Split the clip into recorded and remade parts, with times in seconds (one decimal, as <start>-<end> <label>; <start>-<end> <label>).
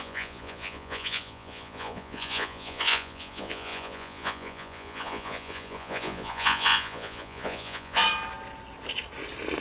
0.0-8.0 remade; 8.0-9.6 recorded